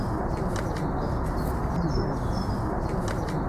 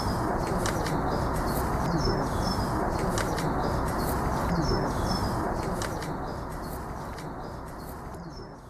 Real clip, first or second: first